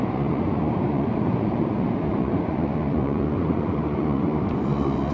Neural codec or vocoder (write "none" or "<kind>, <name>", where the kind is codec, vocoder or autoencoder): vocoder, Vocos